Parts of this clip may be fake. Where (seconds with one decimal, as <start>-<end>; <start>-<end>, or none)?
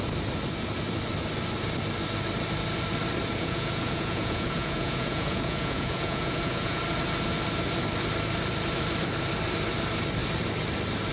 3.3-6.8